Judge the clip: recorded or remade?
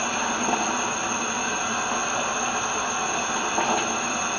recorded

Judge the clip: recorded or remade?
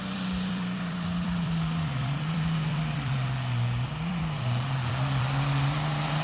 remade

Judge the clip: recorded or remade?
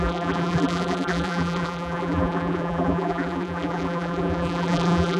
remade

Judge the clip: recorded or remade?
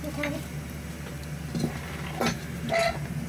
recorded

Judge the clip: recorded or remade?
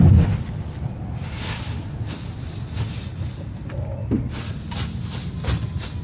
recorded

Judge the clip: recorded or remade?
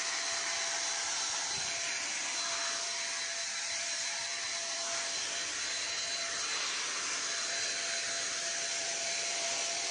remade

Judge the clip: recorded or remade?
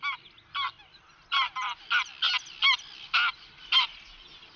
recorded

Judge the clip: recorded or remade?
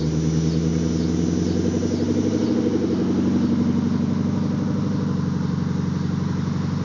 recorded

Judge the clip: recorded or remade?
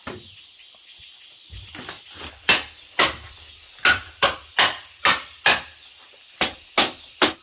recorded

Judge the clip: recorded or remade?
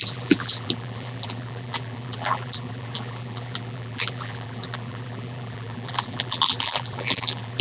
remade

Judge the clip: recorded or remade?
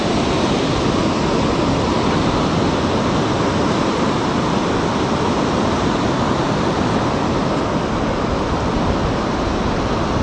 recorded